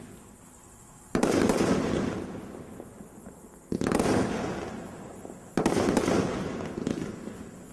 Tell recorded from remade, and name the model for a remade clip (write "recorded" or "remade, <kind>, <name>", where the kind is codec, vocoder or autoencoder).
recorded